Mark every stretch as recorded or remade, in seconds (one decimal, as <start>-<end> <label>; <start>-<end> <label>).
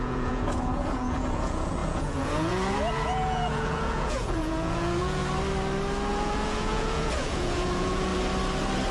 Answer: 0.0-5.2 remade; 5.2-6.1 recorded; 6.1-8.1 remade; 8.1-8.9 recorded